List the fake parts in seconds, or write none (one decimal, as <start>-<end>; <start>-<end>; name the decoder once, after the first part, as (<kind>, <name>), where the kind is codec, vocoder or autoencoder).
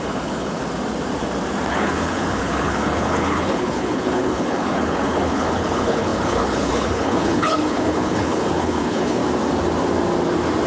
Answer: 0.0-0.6 (codec, HILCodec); 1.7-9.2